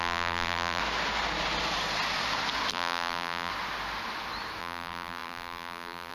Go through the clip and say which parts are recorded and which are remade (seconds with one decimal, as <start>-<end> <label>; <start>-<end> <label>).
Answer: 0.0-0.8 remade; 0.8-2.7 recorded; 2.7-3.5 remade; 3.5-4.6 recorded; 4.6-6.1 remade